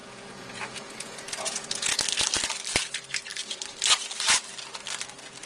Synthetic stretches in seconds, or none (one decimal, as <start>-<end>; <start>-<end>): 0.0-2.0